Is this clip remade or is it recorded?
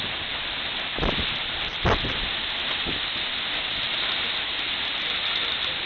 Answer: recorded